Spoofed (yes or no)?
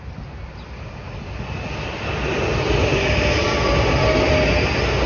no